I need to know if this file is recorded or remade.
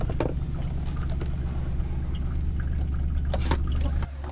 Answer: recorded